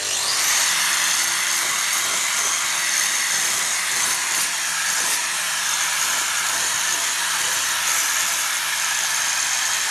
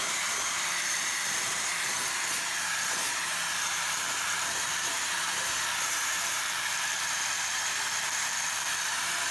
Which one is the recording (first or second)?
first